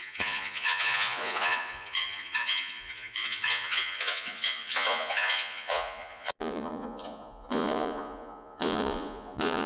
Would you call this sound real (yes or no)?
no